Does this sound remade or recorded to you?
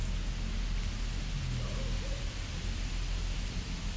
recorded